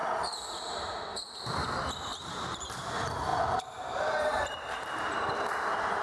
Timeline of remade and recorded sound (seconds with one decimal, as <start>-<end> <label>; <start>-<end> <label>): 0.0-1.0 remade; 1.0-2.1 recorded; 2.1-2.8 remade; 2.8-3.3 recorded; 3.3-5.2 remade; 5.2-6.0 recorded